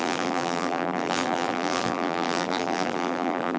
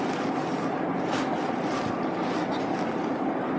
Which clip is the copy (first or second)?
first